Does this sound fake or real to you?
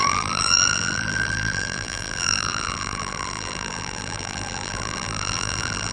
fake